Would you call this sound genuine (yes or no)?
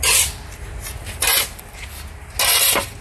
yes